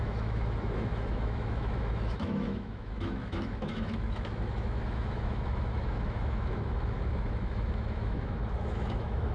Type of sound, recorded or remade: remade